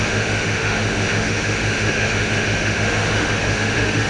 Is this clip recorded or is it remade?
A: remade